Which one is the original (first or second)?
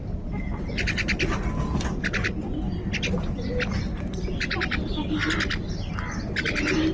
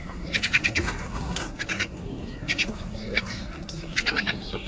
first